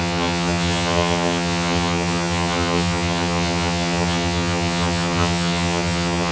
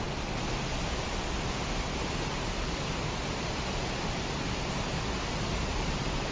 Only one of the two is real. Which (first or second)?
second